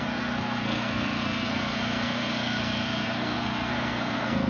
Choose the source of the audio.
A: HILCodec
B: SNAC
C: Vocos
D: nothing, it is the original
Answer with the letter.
B